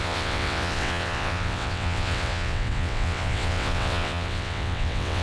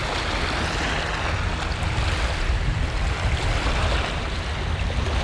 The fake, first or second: first